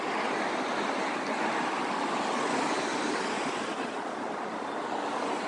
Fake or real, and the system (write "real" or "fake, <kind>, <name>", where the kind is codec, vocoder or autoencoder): real